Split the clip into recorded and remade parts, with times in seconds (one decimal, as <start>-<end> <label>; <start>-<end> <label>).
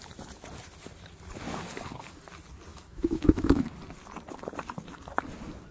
0.0-2.7 recorded; 2.7-3.6 remade; 3.6-5.7 recorded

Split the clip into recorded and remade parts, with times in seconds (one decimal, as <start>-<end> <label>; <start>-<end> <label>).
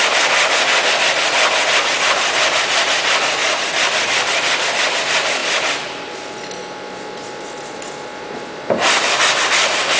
0.0-10.0 recorded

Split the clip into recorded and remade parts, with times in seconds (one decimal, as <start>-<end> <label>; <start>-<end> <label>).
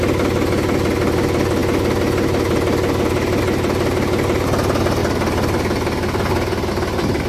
0.0-7.3 recorded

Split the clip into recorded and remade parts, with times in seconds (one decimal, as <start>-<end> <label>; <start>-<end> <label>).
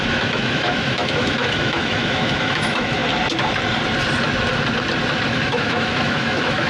0.0-3.0 remade; 3.0-5.3 recorded; 5.3-6.7 remade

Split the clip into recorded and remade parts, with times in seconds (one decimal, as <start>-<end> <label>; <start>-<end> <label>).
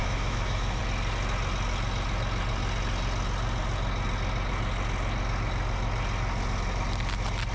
0.0-0.8 remade; 0.8-7.5 recorded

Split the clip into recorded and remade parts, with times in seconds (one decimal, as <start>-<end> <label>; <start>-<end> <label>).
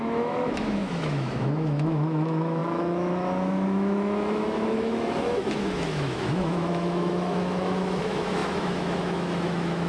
0.0-9.9 remade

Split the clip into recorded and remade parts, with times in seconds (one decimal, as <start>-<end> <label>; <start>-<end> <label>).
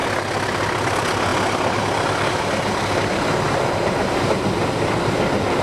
0.0-5.6 recorded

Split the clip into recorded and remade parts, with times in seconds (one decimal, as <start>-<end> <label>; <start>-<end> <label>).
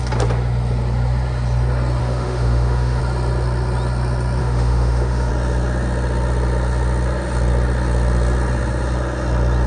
0.0-2.0 recorded; 2.0-3.0 remade; 3.0-4.4 recorded; 4.4-5.3 remade; 5.3-9.7 recorded